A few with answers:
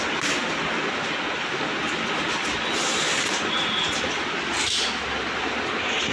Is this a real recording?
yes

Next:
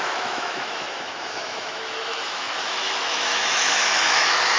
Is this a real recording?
no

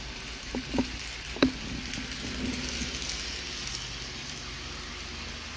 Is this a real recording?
yes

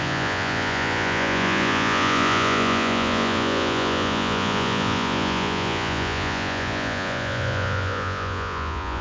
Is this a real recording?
no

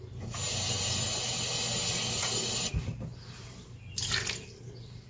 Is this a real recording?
yes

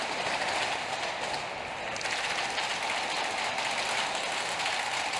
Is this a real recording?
yes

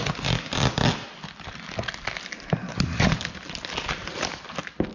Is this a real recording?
yes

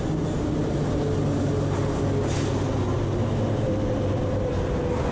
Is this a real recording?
yes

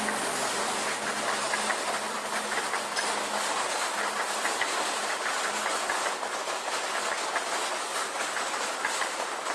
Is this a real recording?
yes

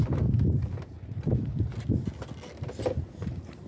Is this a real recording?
yes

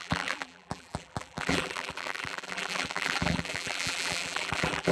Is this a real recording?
no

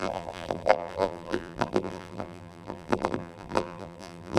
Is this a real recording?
no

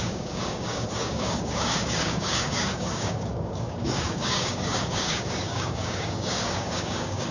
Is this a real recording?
no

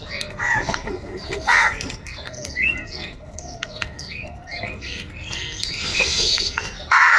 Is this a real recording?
no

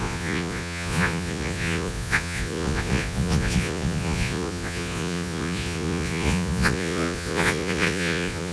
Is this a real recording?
no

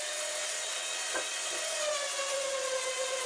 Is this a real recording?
no